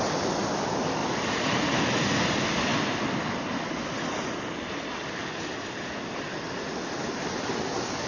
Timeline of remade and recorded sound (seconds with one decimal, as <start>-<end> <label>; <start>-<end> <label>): 0.0-8.1 recorded